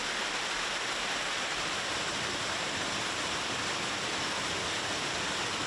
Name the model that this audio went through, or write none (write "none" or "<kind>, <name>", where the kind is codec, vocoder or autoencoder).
none